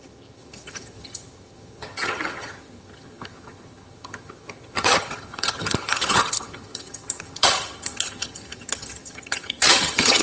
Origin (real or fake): fake